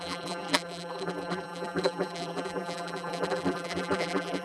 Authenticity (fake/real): fake